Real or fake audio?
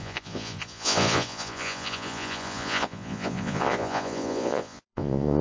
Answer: fake